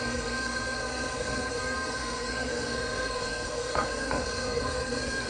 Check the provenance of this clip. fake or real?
fake